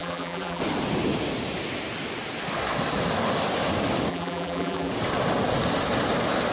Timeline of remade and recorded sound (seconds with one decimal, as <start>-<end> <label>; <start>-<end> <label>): 0.0-0.6 remade; 0.6-4.1 recorded; 4.1-4.9 remade; 4.9-6.5 recorded